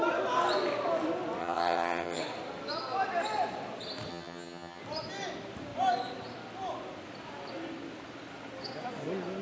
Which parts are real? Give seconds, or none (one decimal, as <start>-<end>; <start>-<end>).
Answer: 0.0-1.4; 2.2-4.1; 4.8-9.4